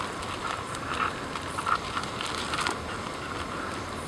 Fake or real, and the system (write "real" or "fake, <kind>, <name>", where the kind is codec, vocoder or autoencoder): real